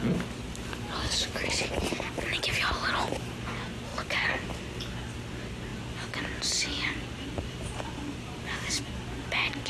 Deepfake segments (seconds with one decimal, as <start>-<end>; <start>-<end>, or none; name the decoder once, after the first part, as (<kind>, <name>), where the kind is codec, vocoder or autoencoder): 3.9-4.6 (vocoder, BigVGAN v2); 5.7-8.7